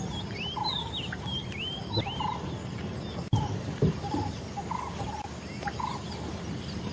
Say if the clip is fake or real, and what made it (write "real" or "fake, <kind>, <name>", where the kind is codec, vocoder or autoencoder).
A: real